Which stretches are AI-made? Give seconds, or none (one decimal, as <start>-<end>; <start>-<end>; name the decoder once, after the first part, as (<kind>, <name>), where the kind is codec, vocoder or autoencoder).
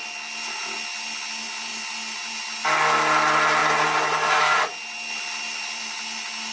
none